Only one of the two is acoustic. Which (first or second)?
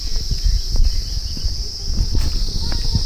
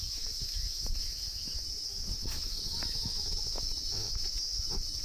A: first